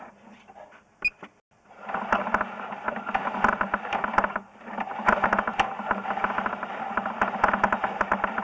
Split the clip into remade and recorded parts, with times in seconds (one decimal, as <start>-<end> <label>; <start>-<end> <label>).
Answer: 0.0-8.4 recorded